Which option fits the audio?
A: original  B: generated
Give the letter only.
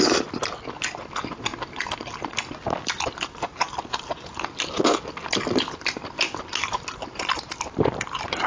A